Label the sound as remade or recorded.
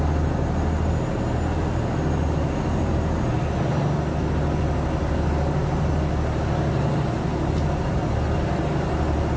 recorded